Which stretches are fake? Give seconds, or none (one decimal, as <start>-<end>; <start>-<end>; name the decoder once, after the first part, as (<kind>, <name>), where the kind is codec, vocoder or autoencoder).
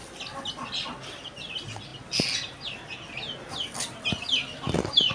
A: none